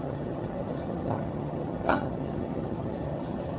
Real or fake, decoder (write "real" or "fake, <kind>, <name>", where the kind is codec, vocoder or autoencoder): fake, vocoder, HiFi-GAN